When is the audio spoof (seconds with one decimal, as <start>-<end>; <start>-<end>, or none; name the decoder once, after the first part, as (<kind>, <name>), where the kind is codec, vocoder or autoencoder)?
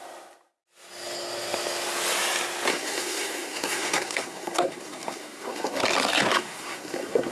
2.7-5.8 (codec, SNAC); 6.3-7.3